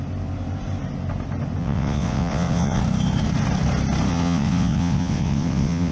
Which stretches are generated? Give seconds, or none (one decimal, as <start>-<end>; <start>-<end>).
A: 1.6-2.8; 4.1-5.9